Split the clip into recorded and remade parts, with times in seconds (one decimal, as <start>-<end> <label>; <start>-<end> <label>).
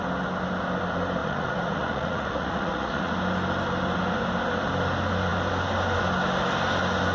0.0-1.2 recorded; 1.2-3.1 remade; 3.1-7.1 recorded